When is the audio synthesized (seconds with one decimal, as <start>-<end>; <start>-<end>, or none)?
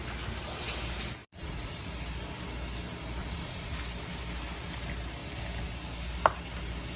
1.2-1.9; 3.2-3.8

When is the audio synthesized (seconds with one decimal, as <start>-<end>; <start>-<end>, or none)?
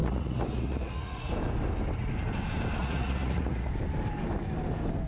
0.0-1.3; 2.8-3.7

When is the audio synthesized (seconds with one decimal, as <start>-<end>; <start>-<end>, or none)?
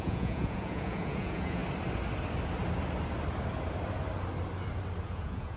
0.0-1.6; 5.0-5.6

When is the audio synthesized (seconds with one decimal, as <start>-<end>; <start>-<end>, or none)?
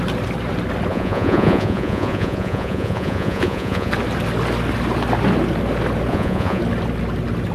0.9-3.9; 6.1-6.6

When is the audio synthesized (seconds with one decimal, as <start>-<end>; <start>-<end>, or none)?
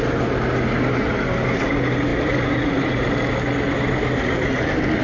none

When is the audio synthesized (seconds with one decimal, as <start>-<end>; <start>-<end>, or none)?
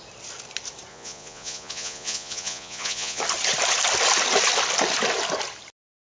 0.9-3.2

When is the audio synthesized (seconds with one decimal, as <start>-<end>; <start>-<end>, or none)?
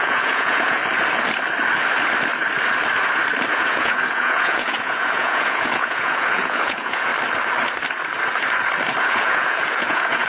0.0-0.8; 3.5-7.1; 9.0-10.3